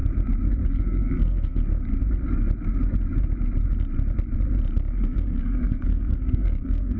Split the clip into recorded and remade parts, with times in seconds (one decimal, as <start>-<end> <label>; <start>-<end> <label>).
0.0-0.7 recorded; 0.7-1.6 remade; 1.6-4.9 recorded; 4.9-7.0 remade